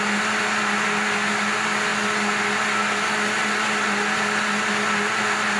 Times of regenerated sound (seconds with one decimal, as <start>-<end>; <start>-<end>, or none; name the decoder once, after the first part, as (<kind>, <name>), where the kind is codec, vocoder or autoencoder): none